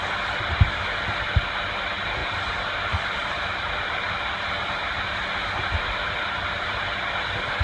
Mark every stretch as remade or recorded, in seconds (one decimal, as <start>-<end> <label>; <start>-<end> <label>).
0.0-2.2 recorded; 2.2-6.8 remade; 6.8-7.6 recorded